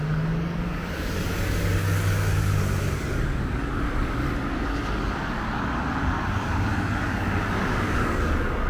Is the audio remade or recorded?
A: remade